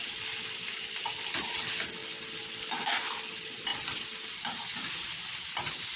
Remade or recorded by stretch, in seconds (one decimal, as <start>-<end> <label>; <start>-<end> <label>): 0.0-6.0 recorded